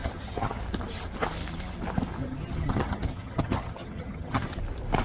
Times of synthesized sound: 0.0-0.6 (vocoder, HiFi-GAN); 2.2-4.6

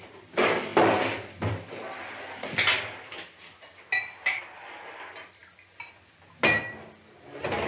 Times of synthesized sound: none